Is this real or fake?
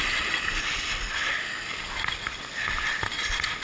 real